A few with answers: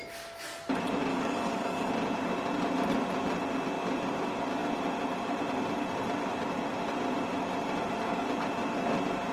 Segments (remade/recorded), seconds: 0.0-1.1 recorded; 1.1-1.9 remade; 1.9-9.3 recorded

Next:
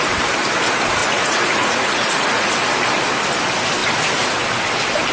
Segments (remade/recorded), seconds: 0.0-1.0 recorded; 1.0-2.5 remade; 2.5-5.1 recorded

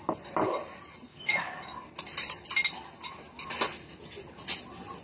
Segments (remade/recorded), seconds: 0.0-1.1 recorded; 1.1-1.6 remade; 1.6-5.0 recorded

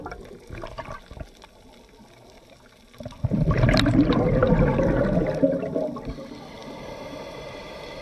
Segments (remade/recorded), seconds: 0.0-4.4 remade; 4.4-5.2 recorded; 5.2-8.0 remade

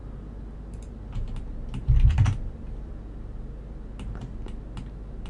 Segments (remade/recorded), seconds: 0.0-1.8 recorded; 1.8-2.9 remade; 2.9-5.3 recorded

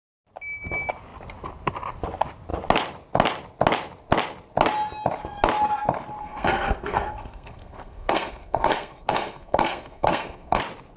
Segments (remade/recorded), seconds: 0.0-6.2 recorded; 6.2-10.6 remade; 10.6-11.0 recorded

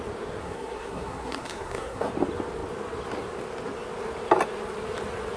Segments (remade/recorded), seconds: 0.0-0.4 recorded; 0.4-2.1 remade; 2.1-5.4 recorded